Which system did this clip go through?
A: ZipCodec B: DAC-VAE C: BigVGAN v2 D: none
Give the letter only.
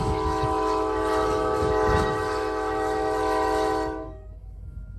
B